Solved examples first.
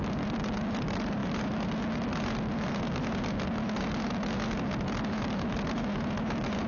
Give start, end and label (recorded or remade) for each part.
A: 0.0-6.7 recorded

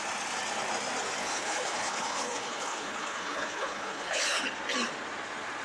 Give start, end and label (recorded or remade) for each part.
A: 0.0-1.2 recorded; 1.2-4.4 remade; 4.4-5.6 recorded

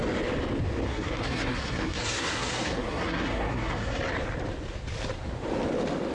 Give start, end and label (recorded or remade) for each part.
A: 0.0-0.9 recorded; 0.9-4.0 remade; 4.0-6.1 recorded